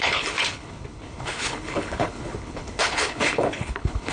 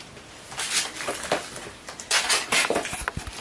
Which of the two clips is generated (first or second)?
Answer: first